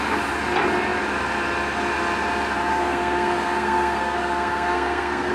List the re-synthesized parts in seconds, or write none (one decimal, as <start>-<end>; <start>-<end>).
2.7-5.3